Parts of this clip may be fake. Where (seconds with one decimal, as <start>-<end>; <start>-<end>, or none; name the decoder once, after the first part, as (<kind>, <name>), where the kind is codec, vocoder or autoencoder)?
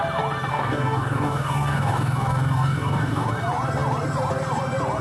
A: 0.5-3.3 (codec, DAC)